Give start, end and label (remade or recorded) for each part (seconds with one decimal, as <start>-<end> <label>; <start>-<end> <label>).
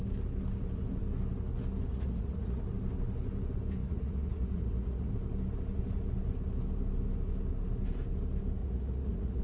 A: 0.0-1.9 recorded; 1.9-2.6 remade; 2.6-3.8 recorded; 3.8-5.1 remade; 5.1-8.6 recorded; 8.6-9.4 remade